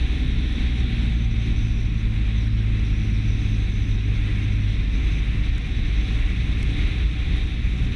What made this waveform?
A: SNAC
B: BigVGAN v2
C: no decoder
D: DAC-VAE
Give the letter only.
C